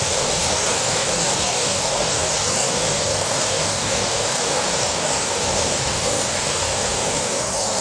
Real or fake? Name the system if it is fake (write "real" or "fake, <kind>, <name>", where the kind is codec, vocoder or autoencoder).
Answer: fake, codec, DAC